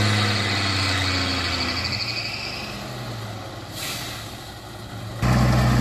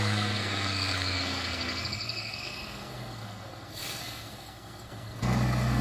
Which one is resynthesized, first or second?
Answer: second